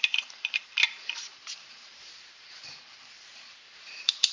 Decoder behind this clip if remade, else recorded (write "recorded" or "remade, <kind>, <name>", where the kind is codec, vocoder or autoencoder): remade, vocoder, BigVGAN v2